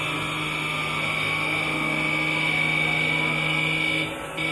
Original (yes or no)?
yes